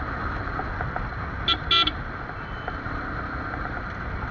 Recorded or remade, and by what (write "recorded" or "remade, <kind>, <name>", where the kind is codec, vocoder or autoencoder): recorded